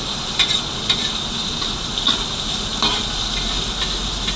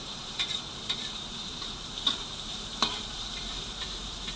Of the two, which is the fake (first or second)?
second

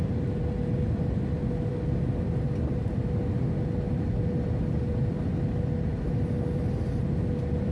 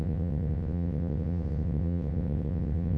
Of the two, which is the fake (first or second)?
second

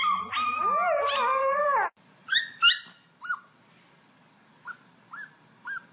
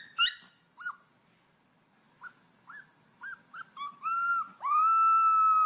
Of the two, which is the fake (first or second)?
first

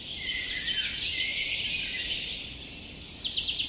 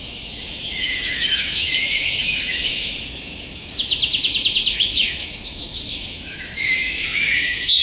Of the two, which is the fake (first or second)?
second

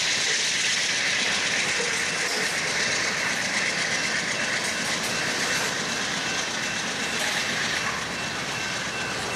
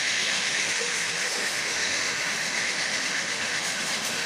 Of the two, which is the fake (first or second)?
second